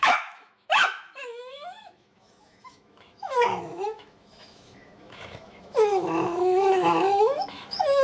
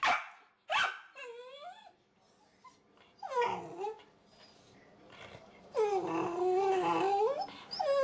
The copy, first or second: first